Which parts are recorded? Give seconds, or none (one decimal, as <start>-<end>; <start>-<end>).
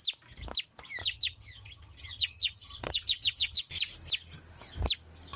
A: 0.0-1.0; 3.6-5.4